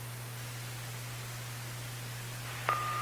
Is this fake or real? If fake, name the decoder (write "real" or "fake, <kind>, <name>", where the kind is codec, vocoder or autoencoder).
real